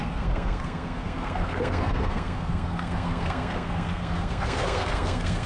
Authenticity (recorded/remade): remade